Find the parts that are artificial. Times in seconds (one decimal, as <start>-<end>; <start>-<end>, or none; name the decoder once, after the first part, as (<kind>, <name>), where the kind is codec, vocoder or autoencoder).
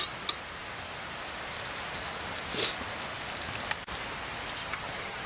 4.6-5.3 (vocoder, HiFi-GAN)